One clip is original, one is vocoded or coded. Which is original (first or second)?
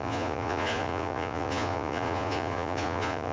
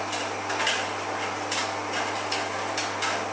second